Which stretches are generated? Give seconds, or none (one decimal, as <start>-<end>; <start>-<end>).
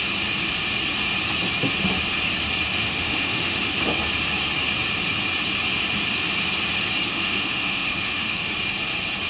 2.7-3.7; 7.1-8.5